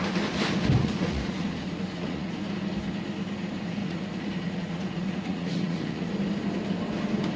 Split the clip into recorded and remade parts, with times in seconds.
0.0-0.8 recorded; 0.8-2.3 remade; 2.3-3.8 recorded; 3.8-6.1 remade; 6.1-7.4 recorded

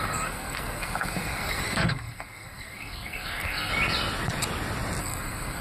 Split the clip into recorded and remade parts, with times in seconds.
0.0-3.7 remade; 3.7-5.0 recorded; 5.0-5.6 remade